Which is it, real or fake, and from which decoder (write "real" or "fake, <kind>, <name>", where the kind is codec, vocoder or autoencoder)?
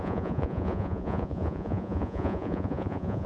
fake, vocoder, Vocos